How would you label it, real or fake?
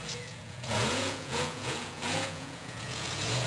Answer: fake